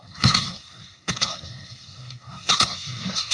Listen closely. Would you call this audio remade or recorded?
remade